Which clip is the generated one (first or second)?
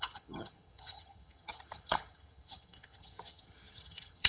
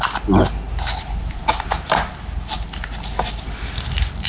first